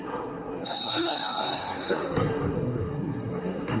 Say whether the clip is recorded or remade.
remade